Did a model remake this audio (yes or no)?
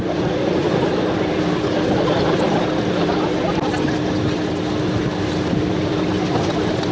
no